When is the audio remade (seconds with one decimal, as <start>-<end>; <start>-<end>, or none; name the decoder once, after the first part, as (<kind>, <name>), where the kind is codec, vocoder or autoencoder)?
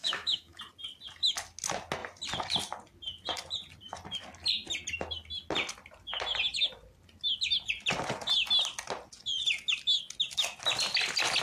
0.0-0.6 (autoencoder, DAC-VAE)